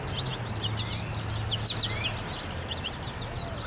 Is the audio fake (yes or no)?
no